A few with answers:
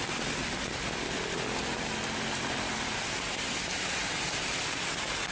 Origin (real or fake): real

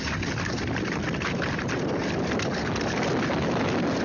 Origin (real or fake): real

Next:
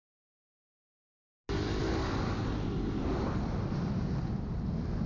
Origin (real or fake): real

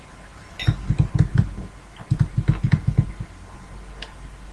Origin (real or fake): real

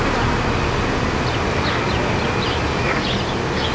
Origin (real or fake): real